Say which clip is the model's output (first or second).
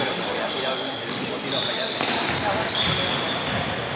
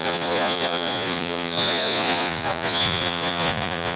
second